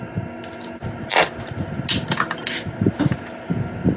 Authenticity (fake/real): real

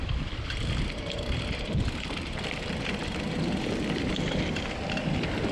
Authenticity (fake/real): fake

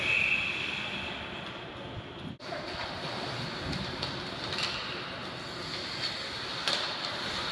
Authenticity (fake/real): real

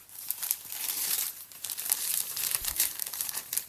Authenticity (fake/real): fake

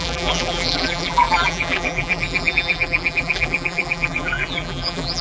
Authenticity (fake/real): fake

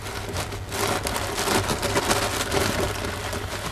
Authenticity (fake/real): real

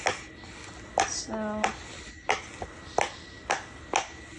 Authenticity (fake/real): real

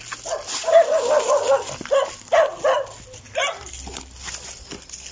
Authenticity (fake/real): real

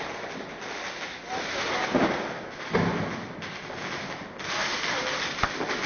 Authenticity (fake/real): real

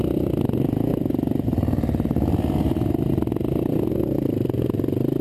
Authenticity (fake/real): real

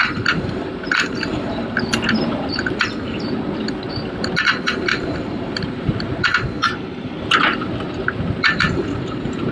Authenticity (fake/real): fake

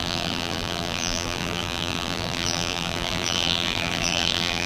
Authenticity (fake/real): fake